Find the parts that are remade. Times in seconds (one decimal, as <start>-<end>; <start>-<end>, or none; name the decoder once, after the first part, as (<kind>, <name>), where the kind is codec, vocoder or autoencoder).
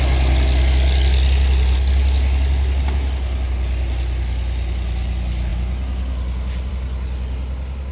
none